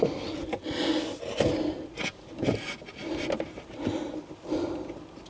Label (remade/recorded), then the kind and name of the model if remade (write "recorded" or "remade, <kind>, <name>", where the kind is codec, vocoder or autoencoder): recorded